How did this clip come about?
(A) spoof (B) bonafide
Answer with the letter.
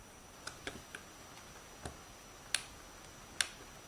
B